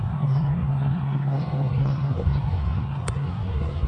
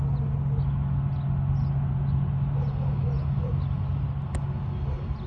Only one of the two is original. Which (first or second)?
second